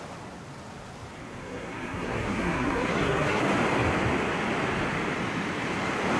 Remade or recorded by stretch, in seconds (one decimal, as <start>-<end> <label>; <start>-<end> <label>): 0.0-1.4 recorded; 1.4-3.4 remade; 3.4-6.2 recorded